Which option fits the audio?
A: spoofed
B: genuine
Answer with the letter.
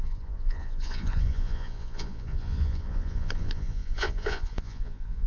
A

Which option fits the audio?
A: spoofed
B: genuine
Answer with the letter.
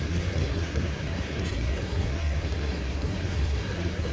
A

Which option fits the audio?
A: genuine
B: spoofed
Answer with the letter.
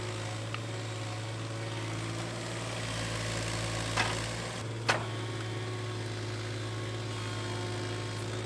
A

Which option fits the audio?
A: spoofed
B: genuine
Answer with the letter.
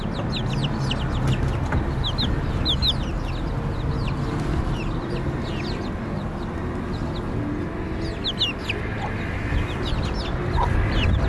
B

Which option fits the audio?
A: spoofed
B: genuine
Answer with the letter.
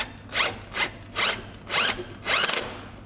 B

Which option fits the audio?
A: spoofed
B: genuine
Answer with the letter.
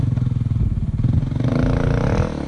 B